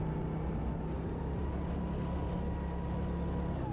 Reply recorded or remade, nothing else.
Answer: recorded